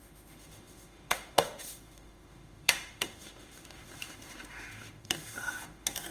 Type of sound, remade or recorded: remade